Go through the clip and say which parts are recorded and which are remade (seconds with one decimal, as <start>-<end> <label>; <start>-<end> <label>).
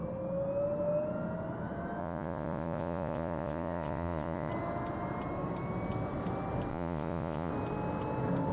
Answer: 0.0-2.0 recorded; 2.0-4.5 remade; 4.5-6.7 recorded; 6.7-7.5 remade; 7.5-8.5 recorded